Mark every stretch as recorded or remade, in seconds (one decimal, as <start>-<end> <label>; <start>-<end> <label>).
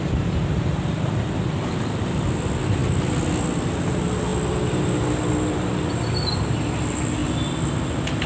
0.0-8.3 recorded